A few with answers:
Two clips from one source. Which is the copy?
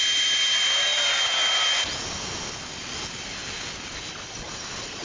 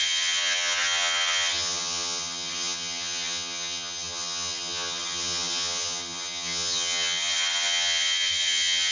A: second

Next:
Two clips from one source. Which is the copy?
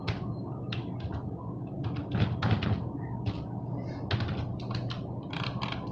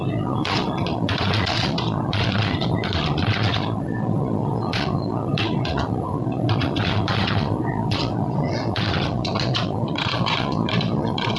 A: second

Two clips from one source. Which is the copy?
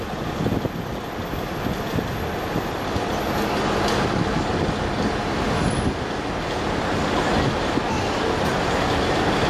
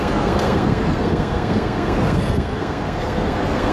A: second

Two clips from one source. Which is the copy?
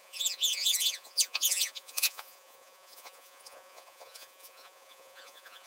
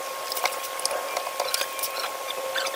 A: first